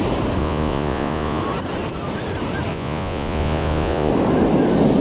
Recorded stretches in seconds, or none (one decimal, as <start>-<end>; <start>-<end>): 0.0-0.4; 1.4-2.7; 4.1-5.0